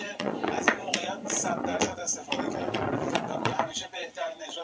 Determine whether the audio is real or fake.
fake